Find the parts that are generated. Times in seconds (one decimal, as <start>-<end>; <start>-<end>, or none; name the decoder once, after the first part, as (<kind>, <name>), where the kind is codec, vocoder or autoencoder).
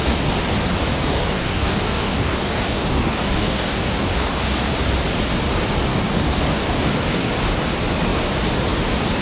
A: 0.9-4.7 (codec, DAC); 5.9-7.3